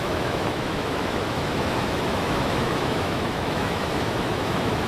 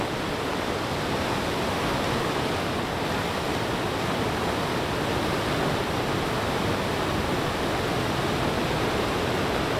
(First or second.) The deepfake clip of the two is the first